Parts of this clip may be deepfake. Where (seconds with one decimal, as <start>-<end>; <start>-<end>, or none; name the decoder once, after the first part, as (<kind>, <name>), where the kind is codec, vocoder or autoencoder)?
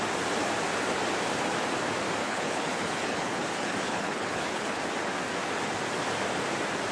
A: 2.2-4.8 (codec, HILCodec)